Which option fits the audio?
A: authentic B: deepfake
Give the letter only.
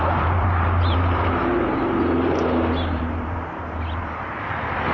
B